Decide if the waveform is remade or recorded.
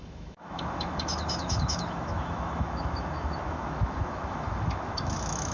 remade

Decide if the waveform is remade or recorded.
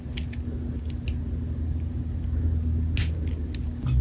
recorded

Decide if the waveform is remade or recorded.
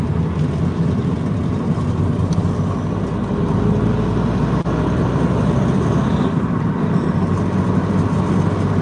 recorded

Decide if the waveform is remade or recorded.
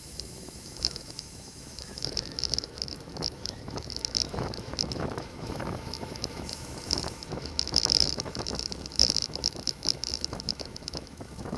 remade